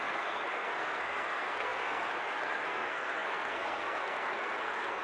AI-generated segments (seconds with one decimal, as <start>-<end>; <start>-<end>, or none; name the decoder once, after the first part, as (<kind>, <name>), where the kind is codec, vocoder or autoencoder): 0.0-5.0 (codec, SNAC)